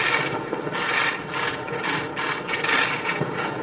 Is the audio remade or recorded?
recorded